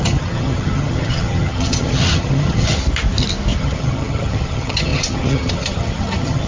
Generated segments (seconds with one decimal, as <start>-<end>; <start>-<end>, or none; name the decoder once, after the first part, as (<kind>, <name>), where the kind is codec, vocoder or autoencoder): 0.0-2.8 (vocoder, HiFi-GAN); 3.6-6.5